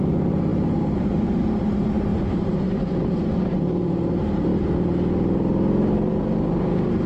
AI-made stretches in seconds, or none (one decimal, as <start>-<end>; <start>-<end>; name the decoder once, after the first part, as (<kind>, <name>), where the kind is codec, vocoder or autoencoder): 0.0-4.5 (vocoder, BigVGAN v2); 5.9-7.1